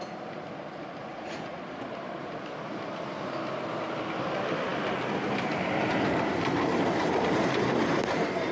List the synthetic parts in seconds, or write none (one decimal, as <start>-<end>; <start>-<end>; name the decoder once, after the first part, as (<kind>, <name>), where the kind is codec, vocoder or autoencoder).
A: 1.0-1.6 (vocoder, Vocos)